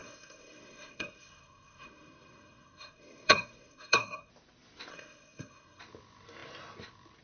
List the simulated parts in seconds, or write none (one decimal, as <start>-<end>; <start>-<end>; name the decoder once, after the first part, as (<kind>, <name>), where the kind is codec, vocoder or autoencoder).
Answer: 0.0-4.3 (codec, SNAC); 4.9-5.8